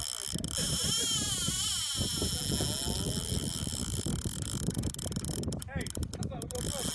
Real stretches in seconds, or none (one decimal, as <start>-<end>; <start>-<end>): 0.0-6.9